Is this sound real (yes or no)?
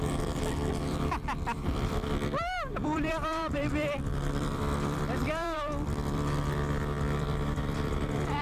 no